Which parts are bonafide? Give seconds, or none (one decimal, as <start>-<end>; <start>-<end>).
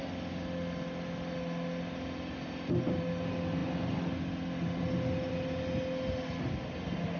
0.0-7.2